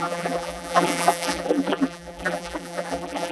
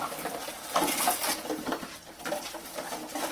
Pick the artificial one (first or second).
first